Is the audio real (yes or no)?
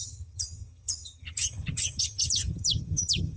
no